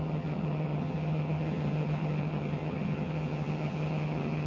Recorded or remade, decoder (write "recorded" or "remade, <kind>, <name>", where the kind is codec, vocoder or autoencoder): remade, vocoder, HiFi-GAN